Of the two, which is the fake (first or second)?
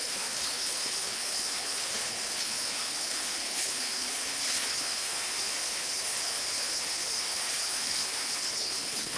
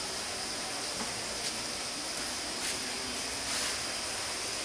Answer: first